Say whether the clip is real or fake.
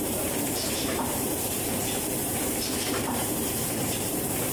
fake